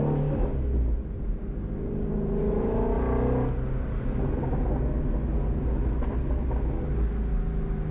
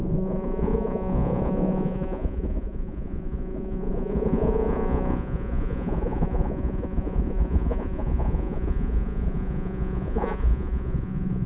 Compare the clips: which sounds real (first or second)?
first